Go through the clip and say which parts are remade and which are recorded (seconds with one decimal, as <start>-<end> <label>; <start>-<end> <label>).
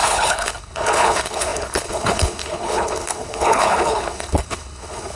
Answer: 0.0-5.2 remade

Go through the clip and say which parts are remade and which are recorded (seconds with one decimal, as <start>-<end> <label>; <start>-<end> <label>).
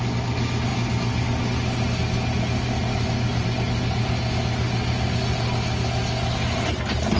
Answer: 0.0-7.2 recorded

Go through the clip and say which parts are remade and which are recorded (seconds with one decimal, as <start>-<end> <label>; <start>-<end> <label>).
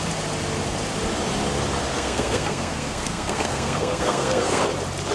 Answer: 0.0-1.9 recorded; 1.9-4.6 remade; 4.6-5.1 recorded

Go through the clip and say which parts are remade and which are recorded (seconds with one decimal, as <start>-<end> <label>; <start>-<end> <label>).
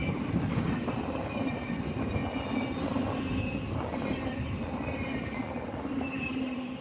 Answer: 0.0-0.9 recorded; 0.9-2.2 remade; 2.2-6.3 recorded; 6.3-6.8 remade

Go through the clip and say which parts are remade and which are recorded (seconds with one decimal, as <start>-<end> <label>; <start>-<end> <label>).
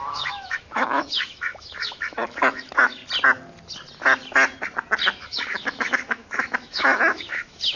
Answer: 0.0-3.0 remade; 3.0-5.2 recorded; 5.2-7.8 remade